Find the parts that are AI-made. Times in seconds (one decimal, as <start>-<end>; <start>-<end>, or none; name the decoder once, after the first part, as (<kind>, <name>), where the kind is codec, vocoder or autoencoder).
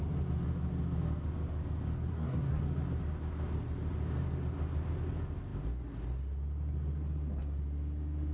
2.1-2.6 (codec, SNAC)